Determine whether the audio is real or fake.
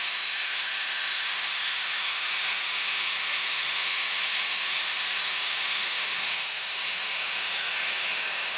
fake